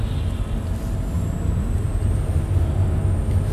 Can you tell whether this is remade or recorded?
recorded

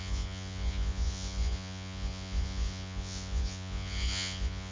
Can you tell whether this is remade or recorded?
remade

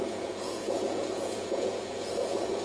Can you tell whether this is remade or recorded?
remade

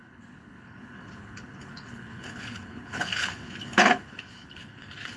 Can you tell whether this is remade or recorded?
remade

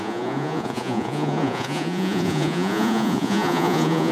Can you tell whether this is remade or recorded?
remade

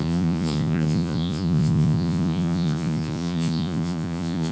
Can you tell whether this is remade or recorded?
remade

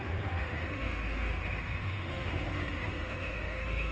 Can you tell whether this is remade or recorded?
remade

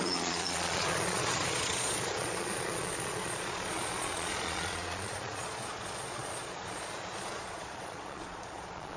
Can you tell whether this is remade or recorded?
remade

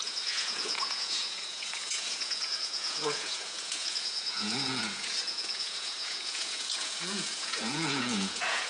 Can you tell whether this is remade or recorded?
remade